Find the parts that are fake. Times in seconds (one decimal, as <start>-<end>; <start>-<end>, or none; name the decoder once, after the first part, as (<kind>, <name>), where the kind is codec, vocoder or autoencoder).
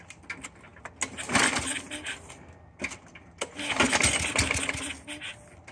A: none